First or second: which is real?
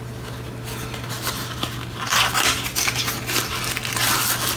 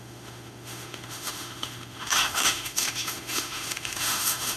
first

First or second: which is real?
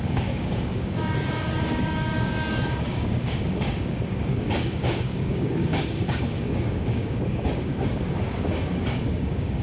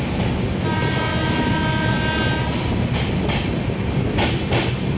second